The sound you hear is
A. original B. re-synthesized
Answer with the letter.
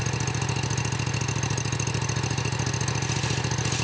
A